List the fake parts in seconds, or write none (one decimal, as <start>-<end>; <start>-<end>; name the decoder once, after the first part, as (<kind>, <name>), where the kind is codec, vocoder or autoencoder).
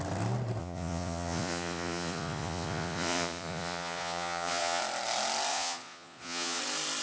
0.6-4.8 (vocoder, Vocos); 5.5-6.6